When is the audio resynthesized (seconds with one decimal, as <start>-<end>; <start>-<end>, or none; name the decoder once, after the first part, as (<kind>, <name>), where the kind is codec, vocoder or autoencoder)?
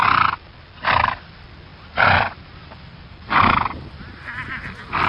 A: none